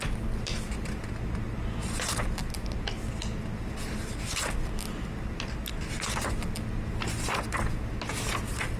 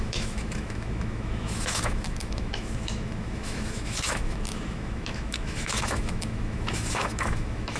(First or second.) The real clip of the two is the first